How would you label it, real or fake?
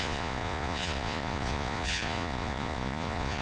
fake